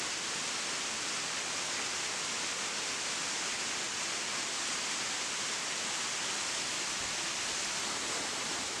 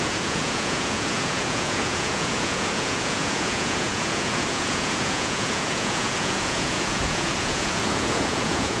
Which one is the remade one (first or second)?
second